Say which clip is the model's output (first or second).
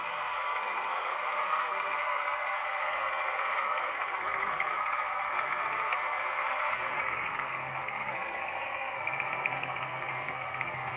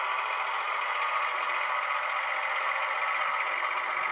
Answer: first